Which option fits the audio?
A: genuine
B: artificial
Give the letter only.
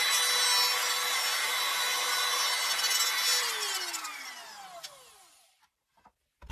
A